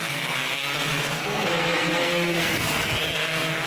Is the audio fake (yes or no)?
yes